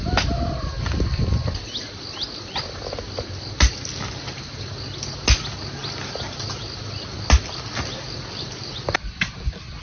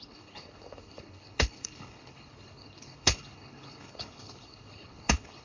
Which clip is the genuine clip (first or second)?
first